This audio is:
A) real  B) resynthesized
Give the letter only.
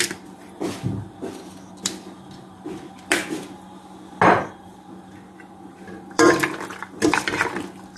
B